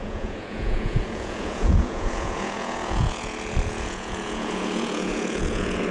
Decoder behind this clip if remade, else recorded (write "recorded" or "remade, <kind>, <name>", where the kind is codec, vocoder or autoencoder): remade, vocoder, Vocos